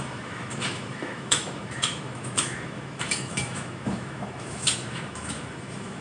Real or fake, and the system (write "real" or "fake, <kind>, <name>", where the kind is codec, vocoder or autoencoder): fake, autoencoder, DAC-VAE